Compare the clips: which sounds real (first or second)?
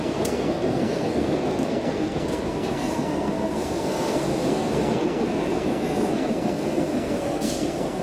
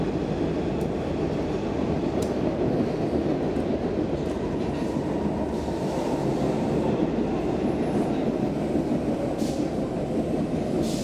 second